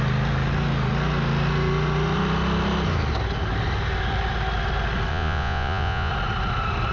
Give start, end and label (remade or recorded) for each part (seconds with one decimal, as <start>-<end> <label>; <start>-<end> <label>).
0.0-5.1 recorded; 5.1-6.1 remade; 6.1-6.9 recorded